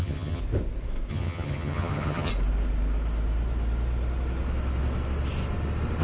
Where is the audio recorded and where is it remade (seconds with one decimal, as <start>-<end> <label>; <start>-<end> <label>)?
0.0-0.4 remade; 0.4-1.1 recorded; 1.1-2.3 remade; 2.3-6.0 recorded